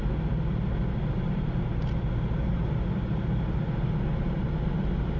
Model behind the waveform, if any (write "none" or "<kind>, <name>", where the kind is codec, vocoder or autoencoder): none